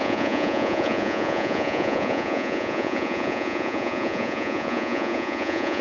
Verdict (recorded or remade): remade